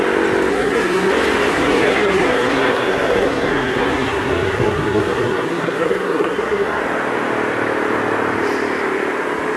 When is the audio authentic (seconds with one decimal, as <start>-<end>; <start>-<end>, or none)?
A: 0.0-0.5; 1.1-1.5; 6.8-9.6